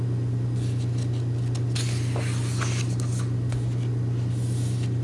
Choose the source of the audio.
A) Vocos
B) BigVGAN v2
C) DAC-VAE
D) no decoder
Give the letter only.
D